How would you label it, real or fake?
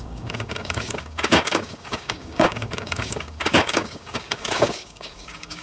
fake